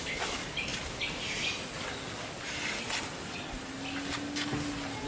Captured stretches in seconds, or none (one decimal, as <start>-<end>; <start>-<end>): 0.0-5.1